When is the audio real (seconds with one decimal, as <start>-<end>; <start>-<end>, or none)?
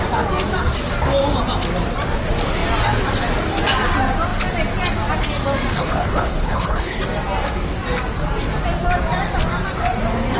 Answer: 0.0-5.7; 7.0-10.4